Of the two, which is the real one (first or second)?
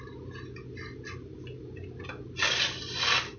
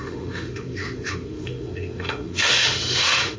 first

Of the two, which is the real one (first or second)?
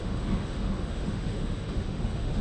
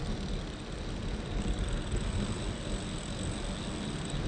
second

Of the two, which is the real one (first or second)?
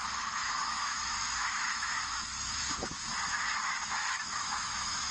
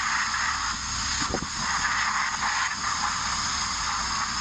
second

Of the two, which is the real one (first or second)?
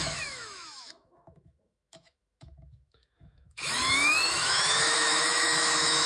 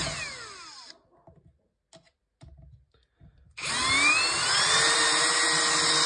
second